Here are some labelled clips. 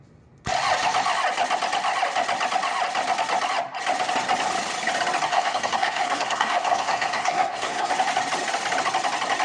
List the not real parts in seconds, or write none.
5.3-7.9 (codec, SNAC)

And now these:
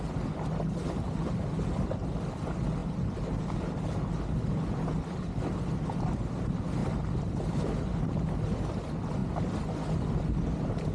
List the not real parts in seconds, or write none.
none